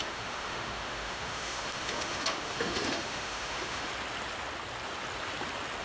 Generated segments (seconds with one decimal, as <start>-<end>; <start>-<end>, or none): 0.0-3.9